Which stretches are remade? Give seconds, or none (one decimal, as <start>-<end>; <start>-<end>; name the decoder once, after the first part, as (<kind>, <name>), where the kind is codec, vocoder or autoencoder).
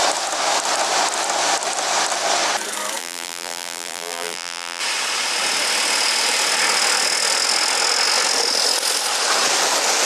3.0-4.8 (vocoder, BigVGAN v2)